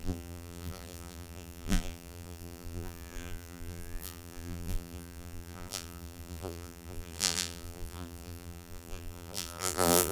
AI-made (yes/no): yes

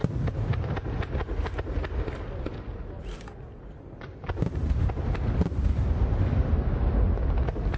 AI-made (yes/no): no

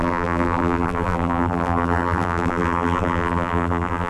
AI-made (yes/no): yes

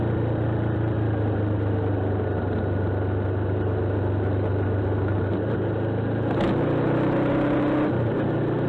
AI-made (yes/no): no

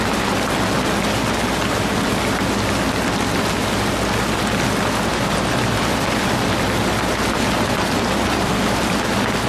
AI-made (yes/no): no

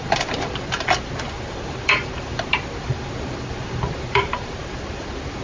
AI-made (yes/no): yes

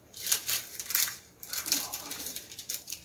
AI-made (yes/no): yes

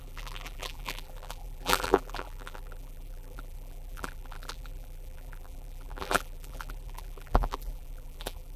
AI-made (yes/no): yes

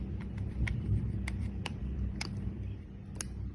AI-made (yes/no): yes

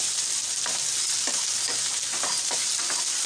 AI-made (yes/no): yes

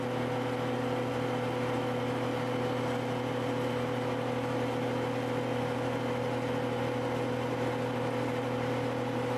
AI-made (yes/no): no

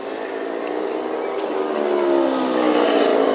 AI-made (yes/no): no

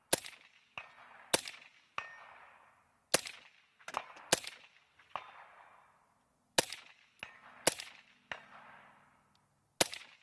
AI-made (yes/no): no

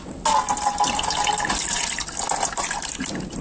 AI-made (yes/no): no